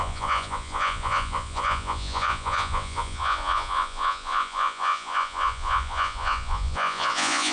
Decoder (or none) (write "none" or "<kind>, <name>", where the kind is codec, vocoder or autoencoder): vocoder, Vocos